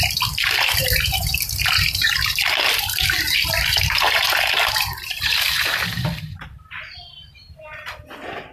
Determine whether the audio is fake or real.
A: fake